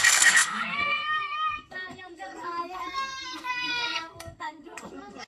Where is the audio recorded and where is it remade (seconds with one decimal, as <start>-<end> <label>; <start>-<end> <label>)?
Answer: 0.0-5.3 remade